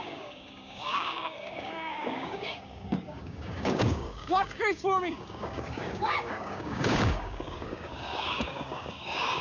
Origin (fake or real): fake